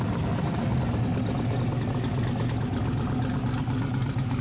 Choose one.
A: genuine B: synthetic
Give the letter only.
A